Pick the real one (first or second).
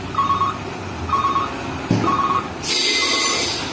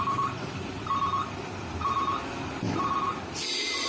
first